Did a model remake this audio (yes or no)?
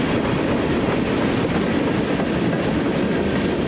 no